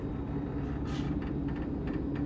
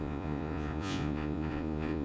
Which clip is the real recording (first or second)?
first